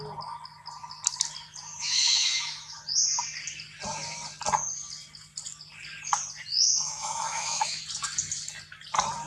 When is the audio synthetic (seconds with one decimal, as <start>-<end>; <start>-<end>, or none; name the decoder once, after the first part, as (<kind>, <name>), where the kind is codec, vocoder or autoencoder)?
1.7-2.8 (autoencoder, DAC-VAE); 6.5-7.8